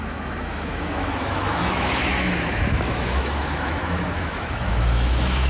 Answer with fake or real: fake